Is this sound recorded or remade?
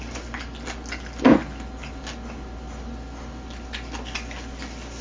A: recorded